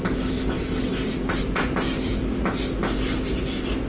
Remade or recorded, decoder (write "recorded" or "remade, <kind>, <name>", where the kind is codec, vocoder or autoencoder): recorded